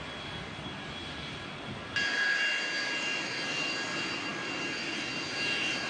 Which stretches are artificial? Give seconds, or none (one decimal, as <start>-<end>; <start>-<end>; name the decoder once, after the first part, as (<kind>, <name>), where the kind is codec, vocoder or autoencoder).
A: none